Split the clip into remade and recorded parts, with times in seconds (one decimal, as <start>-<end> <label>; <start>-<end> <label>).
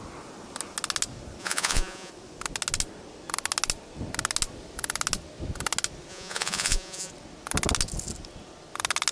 0.0-1.4 recorded; 1.4-2.1 remade; 2.1-6.1 recorded; 6.1-7.1 remade; 7.1-9.1 recorded